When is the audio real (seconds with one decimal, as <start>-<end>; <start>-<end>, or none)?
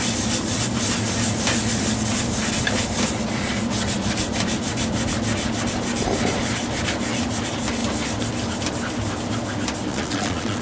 0.0-9.9